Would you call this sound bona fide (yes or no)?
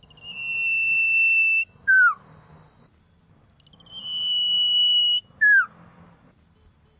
yes